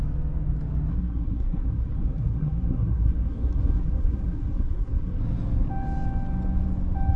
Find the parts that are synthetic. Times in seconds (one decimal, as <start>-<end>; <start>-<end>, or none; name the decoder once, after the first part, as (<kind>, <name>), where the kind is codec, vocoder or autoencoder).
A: 0.9-5.2 (codec, SNAC)